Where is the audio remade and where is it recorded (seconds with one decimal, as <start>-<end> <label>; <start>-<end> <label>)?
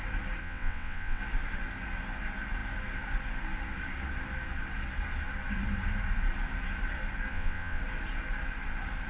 0.0-0.4 recorded; 0.4-1.2 remade; 1.2-7.3 recorded; 7.3-7.8 remade; 7.8-9.1 recorded